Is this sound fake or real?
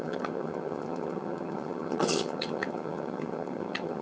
fake